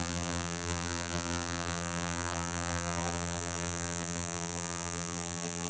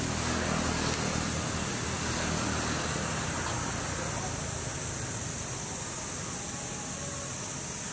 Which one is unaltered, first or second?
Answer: second